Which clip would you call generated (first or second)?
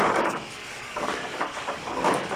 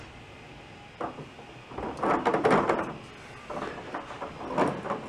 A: first